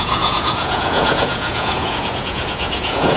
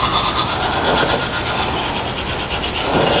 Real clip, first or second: second